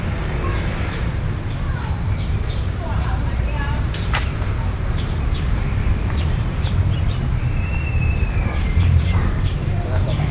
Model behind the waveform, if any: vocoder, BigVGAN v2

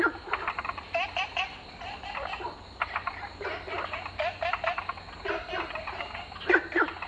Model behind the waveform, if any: none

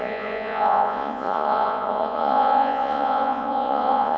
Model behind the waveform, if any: vocoder, Vocos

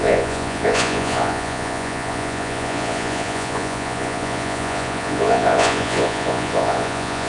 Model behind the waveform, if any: vocoder, Vocos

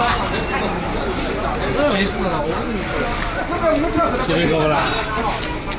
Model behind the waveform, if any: none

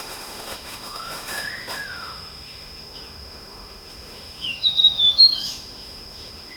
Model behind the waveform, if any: autoencoder, DAC-VAE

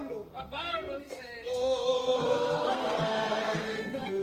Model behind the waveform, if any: codec, SNAC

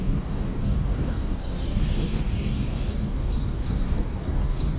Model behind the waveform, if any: codec, DAC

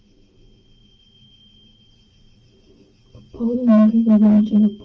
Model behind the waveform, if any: vocoder, Vocos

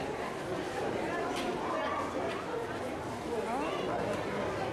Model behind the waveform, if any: none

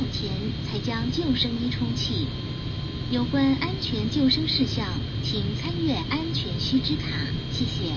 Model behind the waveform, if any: none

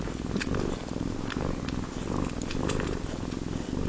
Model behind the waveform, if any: none